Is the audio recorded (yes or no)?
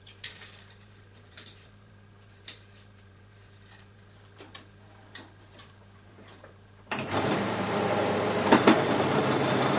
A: no